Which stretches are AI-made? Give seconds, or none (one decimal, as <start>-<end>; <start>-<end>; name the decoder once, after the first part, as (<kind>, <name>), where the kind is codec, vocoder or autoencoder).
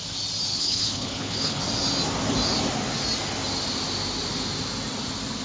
0.5-1.6 (codec, HILCodec)